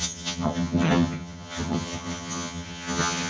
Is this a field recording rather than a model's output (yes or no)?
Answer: no